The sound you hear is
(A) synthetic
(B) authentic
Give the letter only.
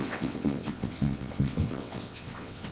A